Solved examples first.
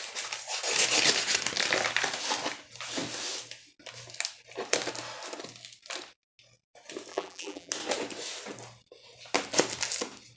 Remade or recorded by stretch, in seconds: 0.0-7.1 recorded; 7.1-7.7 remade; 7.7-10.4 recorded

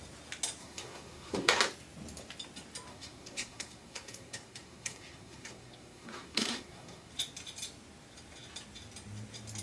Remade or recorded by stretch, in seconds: 0.0-0.6 recorded; 0.6-1.6 remade; 1.6-2.9 recorded; 2.9-7.1 remade; 7.1-9.6 recorded

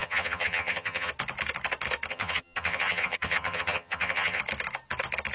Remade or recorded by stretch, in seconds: 0.0-1.1 remade; 1.1-2.1 recorded; 2.1-4.4 remade; 4.4-5.3 recorded

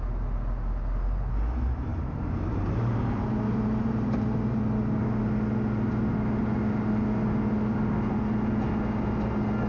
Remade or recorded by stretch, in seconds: 0.0-1.9 recorded; 1.9-4.6 remade; 4.6-9.7 recorded

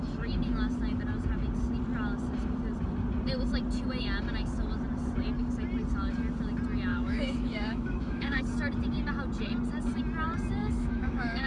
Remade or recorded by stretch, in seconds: 0.0-6.9 recorded; 6.9-8.4 remade; 8.4-10.6 recorded; 10.6-11.5 remade

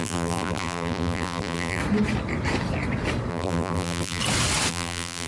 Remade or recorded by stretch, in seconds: 0.0-1.8 remade; 1.8-3.3 recorded; 3.3-4.2 remade; 4.2-4.7 recorded; 4.7-5.3 remade